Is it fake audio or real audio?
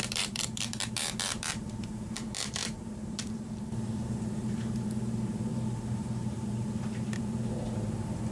fake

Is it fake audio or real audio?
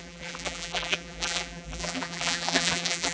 fake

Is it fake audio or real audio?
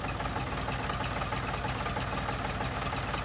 real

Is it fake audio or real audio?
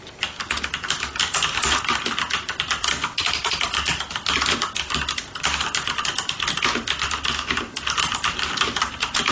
real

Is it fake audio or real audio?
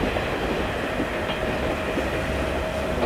real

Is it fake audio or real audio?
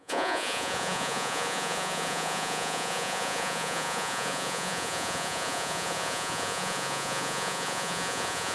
fake